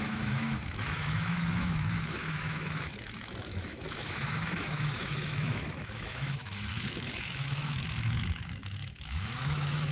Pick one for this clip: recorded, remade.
remade